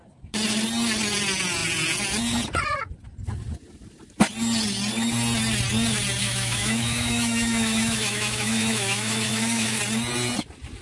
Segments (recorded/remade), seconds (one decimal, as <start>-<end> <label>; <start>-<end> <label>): 0.0-6.2 recorded; 6.2-9.8 remade; 9.8-10.8 recorded